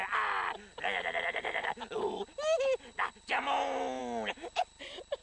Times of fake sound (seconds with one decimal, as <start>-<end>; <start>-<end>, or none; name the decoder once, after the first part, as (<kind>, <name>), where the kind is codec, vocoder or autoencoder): none

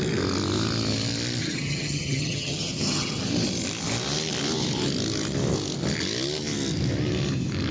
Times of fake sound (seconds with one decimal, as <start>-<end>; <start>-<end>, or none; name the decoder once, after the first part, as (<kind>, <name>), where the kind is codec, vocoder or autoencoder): 1.4-3.3 (vocoder, HiFi-GAN)

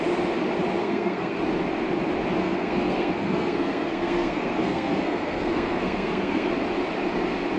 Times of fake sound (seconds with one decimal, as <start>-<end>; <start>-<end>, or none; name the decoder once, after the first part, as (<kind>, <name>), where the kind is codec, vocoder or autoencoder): 0.8-1.4 (codec, SNAC); 2.4-6.5

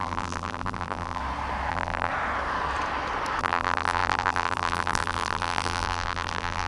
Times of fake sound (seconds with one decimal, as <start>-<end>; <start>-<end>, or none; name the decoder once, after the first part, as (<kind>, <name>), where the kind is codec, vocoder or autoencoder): 0.0-1.2 (vocoder, BigVGAN v2); 1.7-2.1; 3.4-6.7